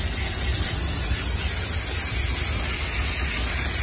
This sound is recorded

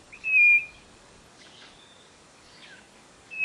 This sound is remade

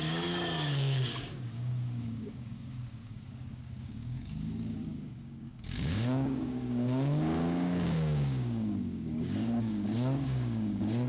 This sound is remade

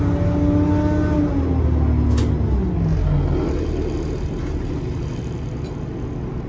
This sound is recorded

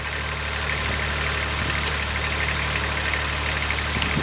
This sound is recorded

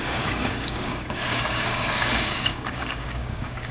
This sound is remade